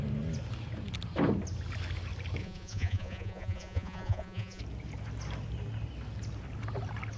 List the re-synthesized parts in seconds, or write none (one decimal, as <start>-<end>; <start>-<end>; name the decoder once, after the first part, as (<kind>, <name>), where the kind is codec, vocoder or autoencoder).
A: 2.4-4.6 (vocoder, Vocos)